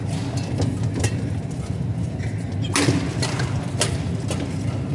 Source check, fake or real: real